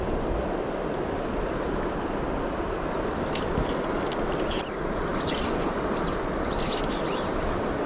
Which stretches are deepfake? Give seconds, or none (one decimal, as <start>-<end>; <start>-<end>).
none